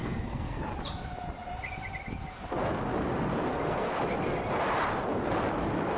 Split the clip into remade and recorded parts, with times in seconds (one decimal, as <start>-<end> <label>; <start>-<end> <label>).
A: 0.0-0.6 remade; 0.6-3.5 recorded; 3.5-4.0 remade; 4.0-6.0 recorded